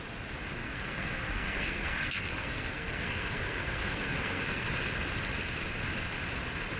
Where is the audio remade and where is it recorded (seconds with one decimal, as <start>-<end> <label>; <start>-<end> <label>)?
0.0-0.6 recorded; 0.6-4.7 remade; 4.7-6.8 recorded